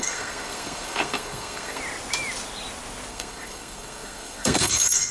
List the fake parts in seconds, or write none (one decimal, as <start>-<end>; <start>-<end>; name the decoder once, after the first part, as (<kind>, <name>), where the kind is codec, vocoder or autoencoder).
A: 0.0-1.8 (codec, SNAC); 3.1-5.1